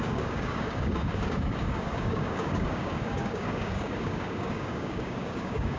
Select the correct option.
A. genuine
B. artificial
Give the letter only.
B